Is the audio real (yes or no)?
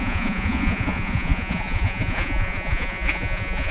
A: no